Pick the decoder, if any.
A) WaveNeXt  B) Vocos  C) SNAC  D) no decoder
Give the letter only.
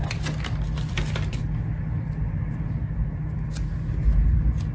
D